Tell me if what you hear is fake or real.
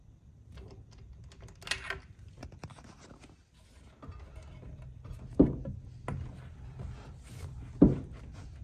real